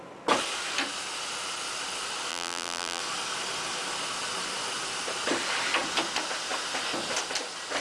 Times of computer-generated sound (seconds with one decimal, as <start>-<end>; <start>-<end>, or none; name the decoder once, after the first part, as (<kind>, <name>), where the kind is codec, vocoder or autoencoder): 2.3-3.0 (vocoder, BigVGAN v2)